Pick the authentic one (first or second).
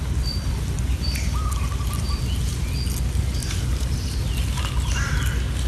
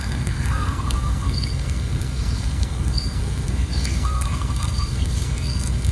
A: first